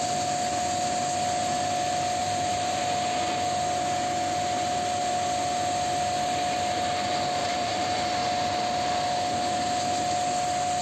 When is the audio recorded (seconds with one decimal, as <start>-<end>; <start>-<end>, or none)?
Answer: 0.0-2.2; 2.8-7.4; 8.0-10.8